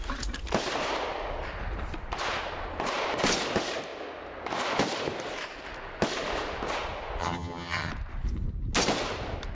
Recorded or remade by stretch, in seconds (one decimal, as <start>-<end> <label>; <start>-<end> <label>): 0.0-7.2 recorded; 7.2-7.9 remade; 7.9-9.5 recorded